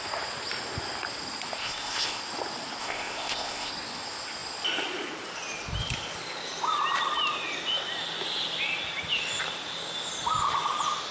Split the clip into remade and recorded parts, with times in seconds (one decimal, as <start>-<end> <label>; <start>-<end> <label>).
0.0-1.6 recorded; 1.6-2.2 remade; 2.2-2.8 recorded; 2.8-3.7 remade; 3.7-11.1 recorded